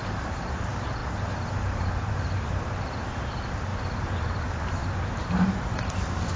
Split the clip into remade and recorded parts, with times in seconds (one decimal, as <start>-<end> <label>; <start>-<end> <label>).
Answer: 0.0-3.7 remade; 3.7-4.2 recorded; 4.2-6.4 remade

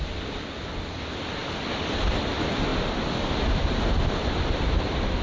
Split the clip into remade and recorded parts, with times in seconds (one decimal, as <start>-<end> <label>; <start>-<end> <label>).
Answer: 0.0-5.2 recorded